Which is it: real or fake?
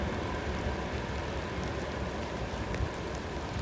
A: fake